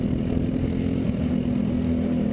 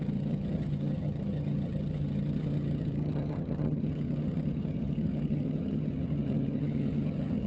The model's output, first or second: second